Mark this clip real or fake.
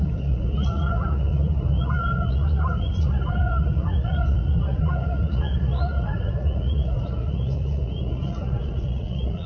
fake